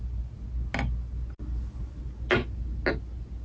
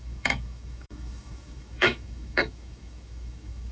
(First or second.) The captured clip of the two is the first